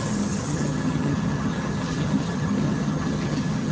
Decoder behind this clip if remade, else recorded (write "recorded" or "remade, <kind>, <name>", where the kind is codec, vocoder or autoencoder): remade, vocoder, HiFi-GAN